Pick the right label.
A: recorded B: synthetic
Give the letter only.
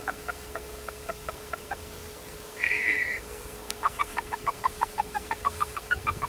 B